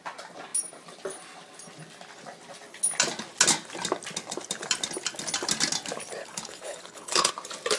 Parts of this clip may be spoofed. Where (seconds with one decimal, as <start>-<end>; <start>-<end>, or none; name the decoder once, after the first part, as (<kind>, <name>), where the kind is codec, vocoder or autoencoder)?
6.2-7.3 (codec, HILCodec)